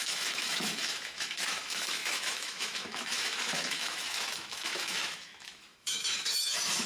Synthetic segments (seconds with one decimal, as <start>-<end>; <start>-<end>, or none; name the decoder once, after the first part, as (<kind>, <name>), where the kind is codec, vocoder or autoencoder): 0.0-6.9 (autoencoder, DAC-VAE)